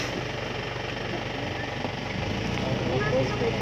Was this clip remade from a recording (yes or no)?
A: no